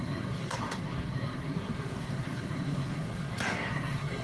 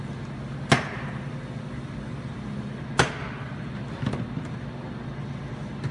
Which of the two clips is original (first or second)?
second